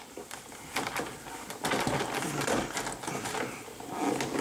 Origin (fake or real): real